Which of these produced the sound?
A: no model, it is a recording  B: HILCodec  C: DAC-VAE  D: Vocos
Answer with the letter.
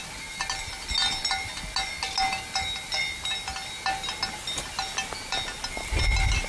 A